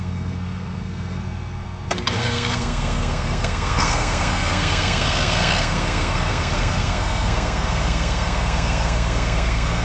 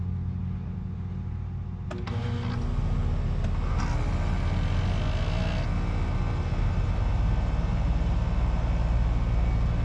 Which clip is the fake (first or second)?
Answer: first